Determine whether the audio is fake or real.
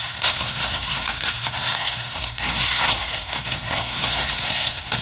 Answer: fake